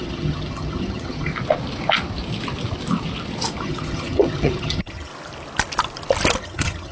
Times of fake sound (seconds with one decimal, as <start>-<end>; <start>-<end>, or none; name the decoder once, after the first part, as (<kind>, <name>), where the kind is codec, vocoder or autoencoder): 0.0-1.3 (vocoder, HiFi-GAN); 3.6-5.1; 6.4-6.9

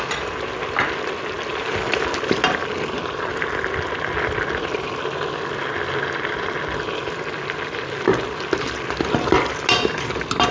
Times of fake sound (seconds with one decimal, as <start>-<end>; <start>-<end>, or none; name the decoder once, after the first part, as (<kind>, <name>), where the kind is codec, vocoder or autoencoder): none